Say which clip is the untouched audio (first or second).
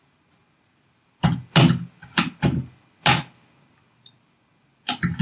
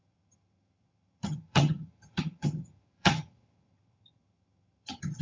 first